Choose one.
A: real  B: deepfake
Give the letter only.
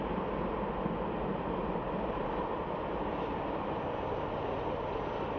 A